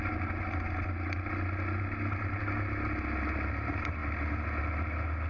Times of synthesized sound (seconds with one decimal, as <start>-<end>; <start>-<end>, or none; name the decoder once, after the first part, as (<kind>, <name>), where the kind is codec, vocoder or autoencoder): none